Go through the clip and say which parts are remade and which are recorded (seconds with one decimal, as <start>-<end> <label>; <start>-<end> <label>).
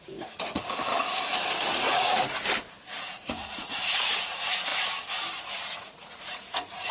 0.0-0.9 remade; 0.9-1.7 recorded; 1.7-2.1 remade; 2.1-3.0 recorded; 3.0-4.7 remade; 4.7-5.4 recorded; 5.4-6.9 remade